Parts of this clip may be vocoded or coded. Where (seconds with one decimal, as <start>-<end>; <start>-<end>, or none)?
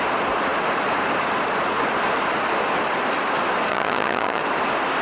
3.7-4.4